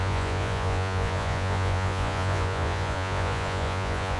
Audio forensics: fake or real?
fake